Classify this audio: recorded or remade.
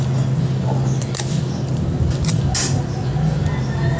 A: recorded